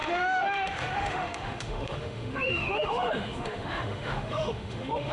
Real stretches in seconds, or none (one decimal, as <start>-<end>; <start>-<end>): none